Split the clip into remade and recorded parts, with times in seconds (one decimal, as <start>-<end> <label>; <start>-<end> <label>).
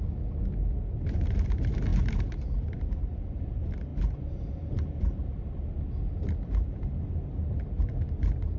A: 0.0-8.6 recorded